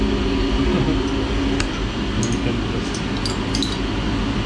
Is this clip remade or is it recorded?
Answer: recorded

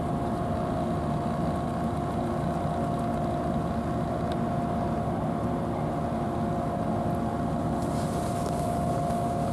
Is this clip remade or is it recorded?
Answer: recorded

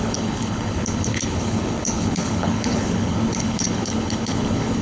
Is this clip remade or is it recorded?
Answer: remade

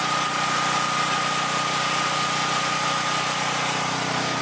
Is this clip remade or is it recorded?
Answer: recorded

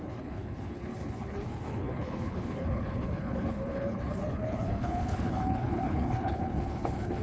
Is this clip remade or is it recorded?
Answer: remade